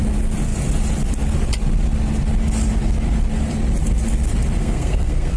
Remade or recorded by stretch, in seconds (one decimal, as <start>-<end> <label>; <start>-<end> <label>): 0.0-4.6 recorded; 4.6-5.4 remade